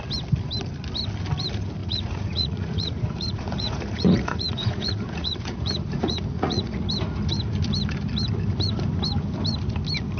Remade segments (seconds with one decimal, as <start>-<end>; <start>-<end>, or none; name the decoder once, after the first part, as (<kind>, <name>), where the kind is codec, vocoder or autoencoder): 1.8-6.8 (vocoder, Vocos)